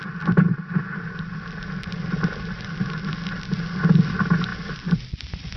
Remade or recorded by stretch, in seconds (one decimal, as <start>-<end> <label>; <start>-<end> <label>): 0.0-5.6 recorded

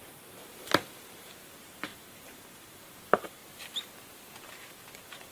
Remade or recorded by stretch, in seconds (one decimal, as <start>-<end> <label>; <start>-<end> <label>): 0.0-3.4 remade; 3.4-4.4 recorded; 4.4-5.3 remade